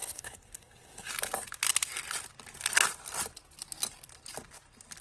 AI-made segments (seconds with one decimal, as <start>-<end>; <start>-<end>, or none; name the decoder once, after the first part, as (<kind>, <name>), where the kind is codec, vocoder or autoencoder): 0.0-1.1 (codec, SNAC)